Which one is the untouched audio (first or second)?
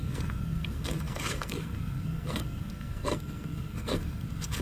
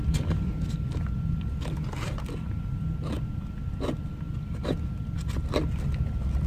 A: second